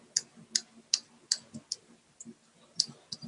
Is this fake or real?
real